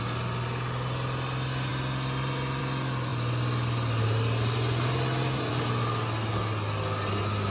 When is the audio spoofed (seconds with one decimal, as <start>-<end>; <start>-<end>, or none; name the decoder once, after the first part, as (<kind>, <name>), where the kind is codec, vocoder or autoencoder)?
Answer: none

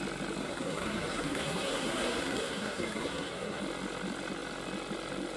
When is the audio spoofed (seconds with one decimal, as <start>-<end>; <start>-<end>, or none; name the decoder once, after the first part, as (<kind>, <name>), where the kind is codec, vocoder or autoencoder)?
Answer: 0.4-3.6 (codec, SNAC)

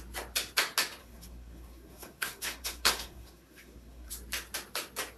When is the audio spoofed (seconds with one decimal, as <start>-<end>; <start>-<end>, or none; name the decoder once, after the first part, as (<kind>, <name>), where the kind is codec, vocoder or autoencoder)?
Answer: 1.0-4.1 (codec, SNAC)

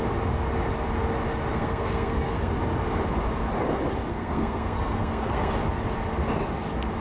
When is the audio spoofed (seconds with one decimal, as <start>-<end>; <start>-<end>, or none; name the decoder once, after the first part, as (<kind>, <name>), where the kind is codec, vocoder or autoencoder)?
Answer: 1.5-2.5 (codec, SNAC); 4.1-5.5

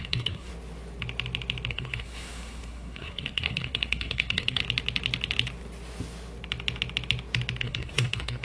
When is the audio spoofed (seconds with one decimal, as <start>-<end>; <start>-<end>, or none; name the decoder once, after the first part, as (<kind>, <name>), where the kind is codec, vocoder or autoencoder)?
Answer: 0.0-0.5 (codec, SNAC); 1.7-4.6; 7.6-8.4

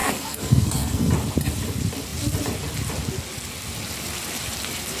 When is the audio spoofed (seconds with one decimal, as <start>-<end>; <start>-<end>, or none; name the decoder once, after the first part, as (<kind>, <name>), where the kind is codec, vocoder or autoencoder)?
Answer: 0.0-1.1 (codec, SNAC)

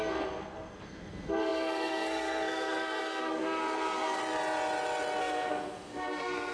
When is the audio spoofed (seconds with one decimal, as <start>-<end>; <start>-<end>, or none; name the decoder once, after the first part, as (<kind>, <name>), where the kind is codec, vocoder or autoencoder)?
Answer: 0.0-4.2 (codec, SNAC); 5.2-6.5

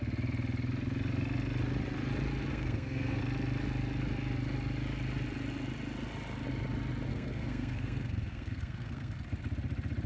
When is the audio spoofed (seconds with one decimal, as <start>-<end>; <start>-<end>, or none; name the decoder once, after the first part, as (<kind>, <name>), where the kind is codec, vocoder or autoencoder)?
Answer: 2.5-3.2 (codec, SNAC); 7.1-9.2